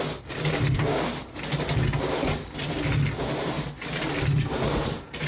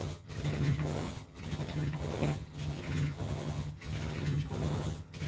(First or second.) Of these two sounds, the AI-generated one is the second